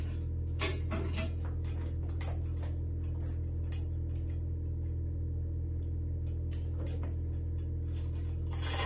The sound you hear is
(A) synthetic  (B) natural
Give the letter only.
B